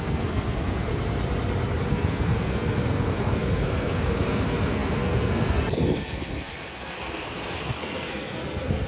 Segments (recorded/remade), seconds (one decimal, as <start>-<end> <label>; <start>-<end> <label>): 0.0-0.9 remade; 0.9-1.9 recorded; 1.9-8.9 remade